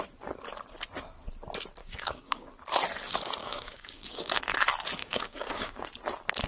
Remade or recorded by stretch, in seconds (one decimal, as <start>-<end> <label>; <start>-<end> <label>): 0.0-1.8 recorded; 1.8-2.5 remade; 2.5-3.4 recorded; 3.4-4.3 remade; 4.3-5.0 recorded; 5.0-5.8 remade; 5.8-6.5 recorded